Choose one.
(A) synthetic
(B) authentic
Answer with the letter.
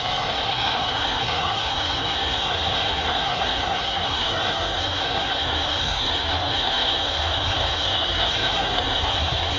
A